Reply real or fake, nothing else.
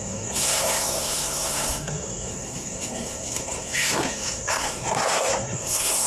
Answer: fake